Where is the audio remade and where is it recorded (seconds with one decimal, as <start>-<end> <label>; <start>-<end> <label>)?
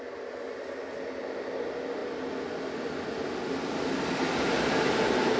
0.0-5.4 recorded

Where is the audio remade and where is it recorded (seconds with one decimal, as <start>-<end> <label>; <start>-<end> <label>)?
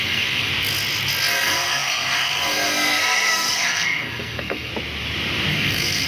0.0-0.5 remade; 0.5-1.3 recorded; 1.3-4.7 remade; 4.7-5.5 recorded; 5.5-6.1 remade